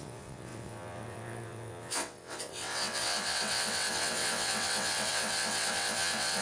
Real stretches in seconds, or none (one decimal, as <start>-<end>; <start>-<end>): none

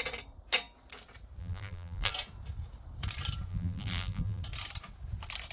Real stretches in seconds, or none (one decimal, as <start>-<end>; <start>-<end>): 0.0-1.4; 2.1-3.5; 4.4-5.5

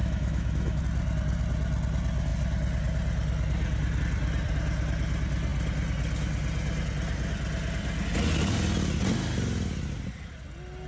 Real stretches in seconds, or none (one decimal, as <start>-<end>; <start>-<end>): 0.8-10.9

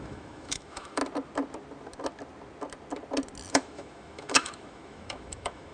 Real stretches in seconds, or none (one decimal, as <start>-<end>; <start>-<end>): 1.0-3.5